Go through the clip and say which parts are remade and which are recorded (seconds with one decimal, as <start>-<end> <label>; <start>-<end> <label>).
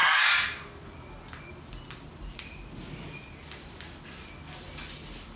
0.0-5.3 recorded